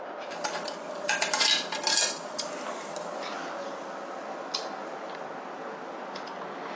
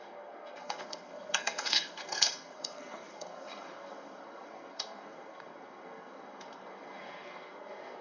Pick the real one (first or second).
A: first